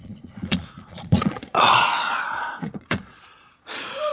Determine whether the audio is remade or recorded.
remade